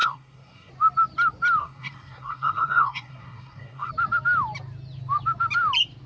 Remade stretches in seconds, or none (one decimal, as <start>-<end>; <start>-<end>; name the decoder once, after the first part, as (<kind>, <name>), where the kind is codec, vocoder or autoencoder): 0.0-0.7 (codec, SNAC); 1.6-3.9

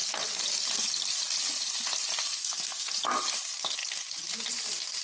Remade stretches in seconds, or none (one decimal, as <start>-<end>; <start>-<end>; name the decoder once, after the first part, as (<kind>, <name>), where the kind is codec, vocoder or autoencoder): 2.4-2.9 (codec, SNAC)

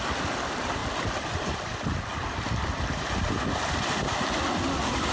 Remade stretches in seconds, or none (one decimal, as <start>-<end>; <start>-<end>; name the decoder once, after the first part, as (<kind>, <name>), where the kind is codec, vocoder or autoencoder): none

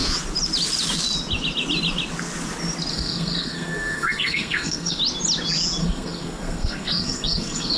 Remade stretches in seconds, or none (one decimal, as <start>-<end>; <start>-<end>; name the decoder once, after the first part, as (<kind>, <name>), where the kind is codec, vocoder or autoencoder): 2.9-5.0 (codec, SNAC); 5.8-7.8